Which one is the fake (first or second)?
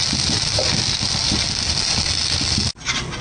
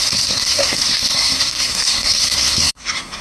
second